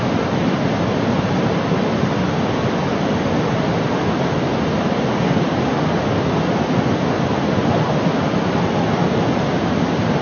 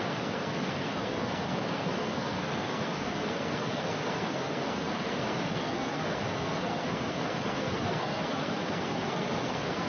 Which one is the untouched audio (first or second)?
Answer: first